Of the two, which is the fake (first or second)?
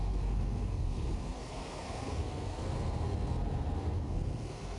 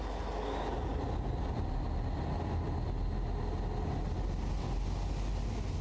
first